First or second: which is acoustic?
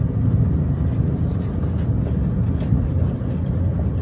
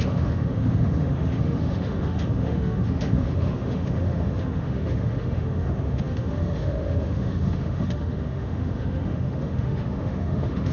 first